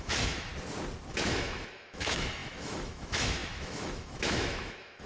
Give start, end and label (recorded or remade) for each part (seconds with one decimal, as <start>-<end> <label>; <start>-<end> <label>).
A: 0.0-0.5 remade; 0.5-1.1 recorded; 1.1-5.1 remade